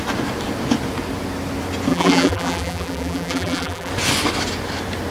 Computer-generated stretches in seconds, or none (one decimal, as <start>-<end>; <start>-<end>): 1.9-3.9